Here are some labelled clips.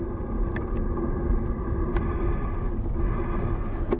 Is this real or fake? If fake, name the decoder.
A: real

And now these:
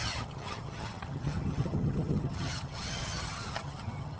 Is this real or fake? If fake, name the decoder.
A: fake, vocoder, HiFi-GAN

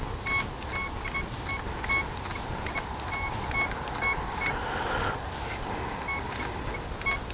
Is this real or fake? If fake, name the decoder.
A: real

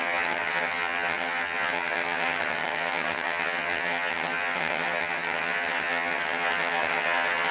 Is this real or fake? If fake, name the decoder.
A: fake, vocoder, HiFi-GAN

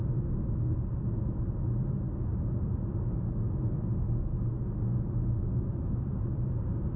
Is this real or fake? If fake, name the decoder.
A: real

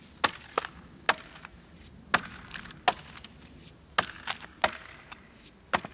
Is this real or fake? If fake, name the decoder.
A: real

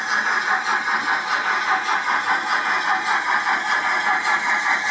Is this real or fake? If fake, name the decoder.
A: real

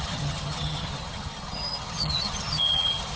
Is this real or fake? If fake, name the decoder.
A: fake, vocoder, HiFi-GAN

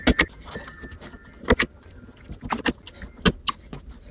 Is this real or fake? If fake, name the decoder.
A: real